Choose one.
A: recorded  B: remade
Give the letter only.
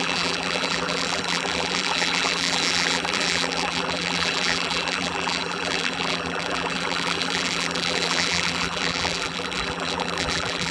B